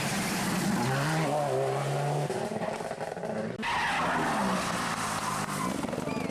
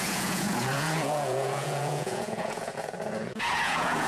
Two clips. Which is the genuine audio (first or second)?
first